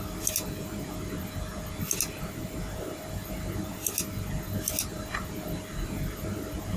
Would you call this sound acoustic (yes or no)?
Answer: yes